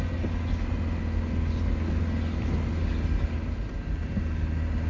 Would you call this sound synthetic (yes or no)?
no